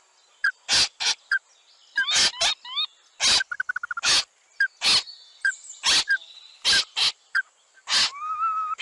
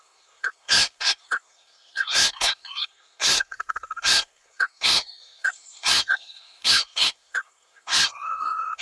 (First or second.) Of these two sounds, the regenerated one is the second